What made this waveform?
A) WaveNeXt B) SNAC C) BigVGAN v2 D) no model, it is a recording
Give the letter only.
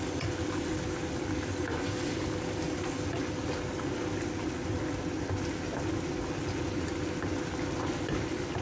D